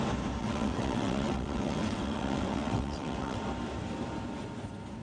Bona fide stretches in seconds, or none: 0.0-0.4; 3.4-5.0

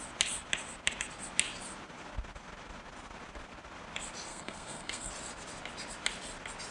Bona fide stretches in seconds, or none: 0.0-4.3; 5.1-6.7

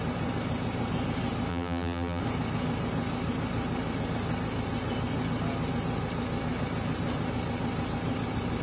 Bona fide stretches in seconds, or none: 0.0-1.5; 2.2-8.6

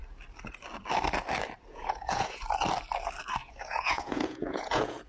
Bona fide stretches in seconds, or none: 0.0-1.7; 2.4-3.4